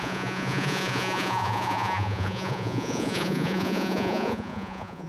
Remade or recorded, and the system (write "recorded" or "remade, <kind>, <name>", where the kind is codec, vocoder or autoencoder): remade, vocoder, Vocos